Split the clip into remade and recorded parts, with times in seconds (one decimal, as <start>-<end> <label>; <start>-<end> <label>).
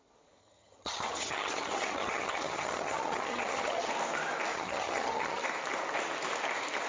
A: 0.0-0.4 recorded; 0.4-3.9 remade; 3.9-4.5 recorded; 4.5-5.4 remade; 5.4-6.9 recorded